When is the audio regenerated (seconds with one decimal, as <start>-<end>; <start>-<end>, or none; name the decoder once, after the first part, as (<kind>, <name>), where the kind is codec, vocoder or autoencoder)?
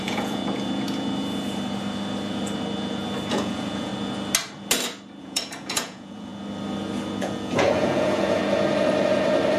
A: 0.0-0.4 (vocoder, Vocos); 3.3-3.9; 5.2-6.3; 7.2-8.4